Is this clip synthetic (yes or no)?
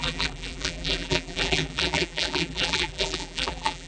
yes